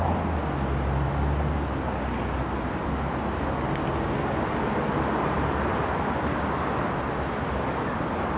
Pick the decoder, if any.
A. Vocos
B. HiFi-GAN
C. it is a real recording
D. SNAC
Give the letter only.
C